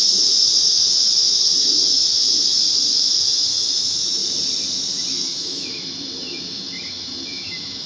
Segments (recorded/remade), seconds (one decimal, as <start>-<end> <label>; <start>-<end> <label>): 0.0-4.2 remade; 4.2-5.1 recorded; 5.1-7.9 remade